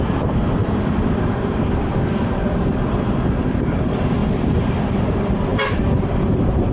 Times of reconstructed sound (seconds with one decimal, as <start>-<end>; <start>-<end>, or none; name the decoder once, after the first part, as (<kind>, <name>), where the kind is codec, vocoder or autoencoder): 0.0-6.7 (vocoder, BigVGAN v2)

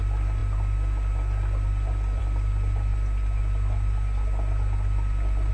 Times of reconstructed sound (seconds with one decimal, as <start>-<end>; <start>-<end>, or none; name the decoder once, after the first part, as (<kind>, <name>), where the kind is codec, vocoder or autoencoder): none

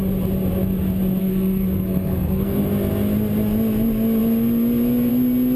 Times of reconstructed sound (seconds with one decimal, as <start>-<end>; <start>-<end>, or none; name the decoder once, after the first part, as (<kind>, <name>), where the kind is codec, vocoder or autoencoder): 1.2-2.7 (codec, SNAC)

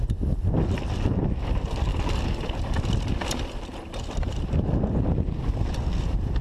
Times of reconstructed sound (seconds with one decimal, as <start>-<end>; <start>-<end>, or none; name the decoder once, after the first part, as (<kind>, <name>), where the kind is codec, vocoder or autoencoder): none

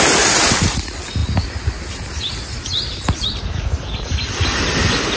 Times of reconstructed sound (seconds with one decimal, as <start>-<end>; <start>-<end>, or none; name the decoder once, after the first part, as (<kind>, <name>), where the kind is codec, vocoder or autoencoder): none

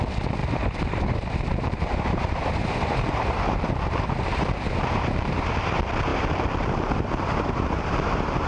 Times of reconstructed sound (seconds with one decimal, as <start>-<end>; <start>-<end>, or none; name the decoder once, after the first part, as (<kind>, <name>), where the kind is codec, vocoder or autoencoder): 0.4-5.5 (vocoder, BigVGAN v2); 6.1-8.5